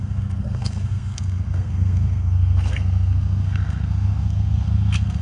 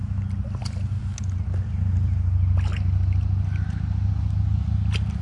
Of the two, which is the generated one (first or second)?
first